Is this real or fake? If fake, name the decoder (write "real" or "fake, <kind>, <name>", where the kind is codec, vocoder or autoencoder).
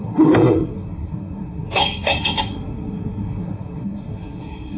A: fake, codec, SNAC